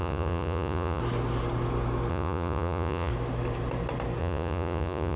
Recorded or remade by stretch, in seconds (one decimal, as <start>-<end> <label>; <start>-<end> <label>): 0.0-1.0 remade; 1.0-2.1 recorded; 2.1-3.1 remade; 3.1-4.2 recorded; 4.2-5.2 remade